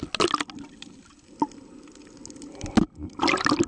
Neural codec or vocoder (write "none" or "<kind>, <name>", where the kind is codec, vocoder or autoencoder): none